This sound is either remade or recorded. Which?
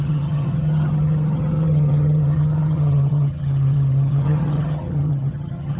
remade